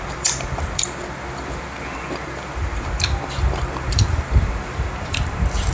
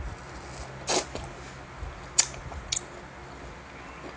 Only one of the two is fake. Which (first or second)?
first